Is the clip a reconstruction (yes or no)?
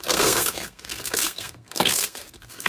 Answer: yes